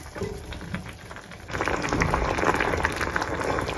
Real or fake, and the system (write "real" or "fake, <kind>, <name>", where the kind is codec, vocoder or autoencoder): real